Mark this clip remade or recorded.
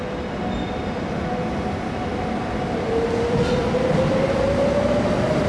recorded